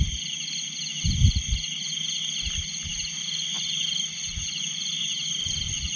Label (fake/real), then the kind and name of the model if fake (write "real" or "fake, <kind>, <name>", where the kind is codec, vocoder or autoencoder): real